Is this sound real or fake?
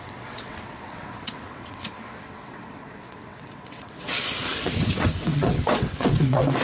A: fake